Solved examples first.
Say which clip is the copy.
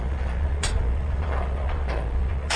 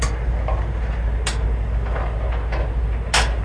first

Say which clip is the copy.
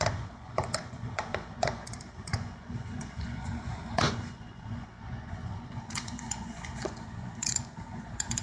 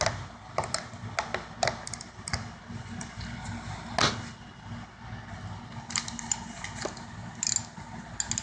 first